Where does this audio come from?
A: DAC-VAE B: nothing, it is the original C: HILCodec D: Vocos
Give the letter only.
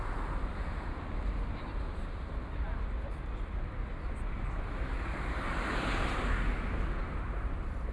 B